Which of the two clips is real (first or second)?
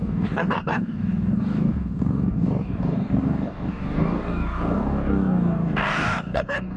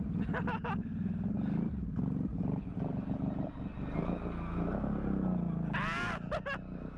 second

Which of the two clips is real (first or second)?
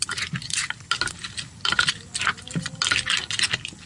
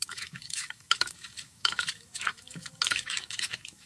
first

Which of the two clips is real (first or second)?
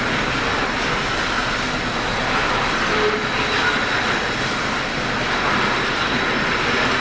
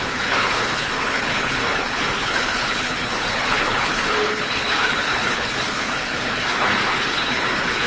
first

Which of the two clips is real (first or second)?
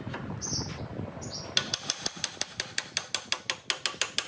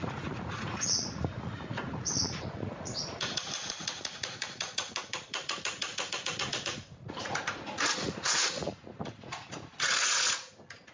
first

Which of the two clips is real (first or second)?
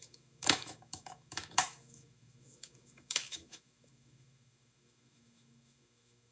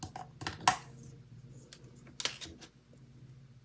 second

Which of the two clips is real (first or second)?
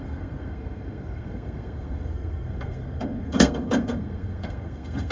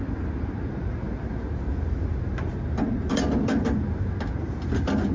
second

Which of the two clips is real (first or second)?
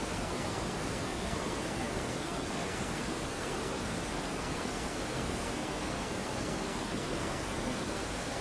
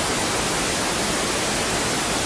second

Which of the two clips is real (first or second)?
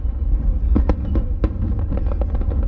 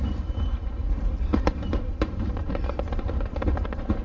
first